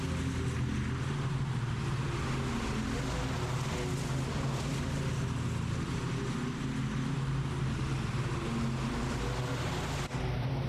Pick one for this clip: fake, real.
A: real